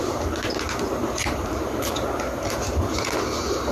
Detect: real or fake real